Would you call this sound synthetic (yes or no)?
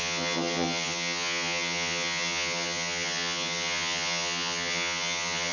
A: yes